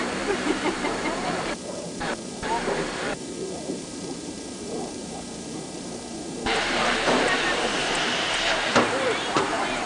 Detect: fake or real fake